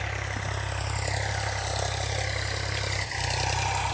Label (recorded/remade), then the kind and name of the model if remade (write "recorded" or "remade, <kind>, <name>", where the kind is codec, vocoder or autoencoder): recorded